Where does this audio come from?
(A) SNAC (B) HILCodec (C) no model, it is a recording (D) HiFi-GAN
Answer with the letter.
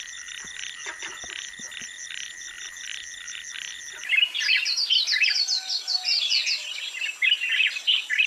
C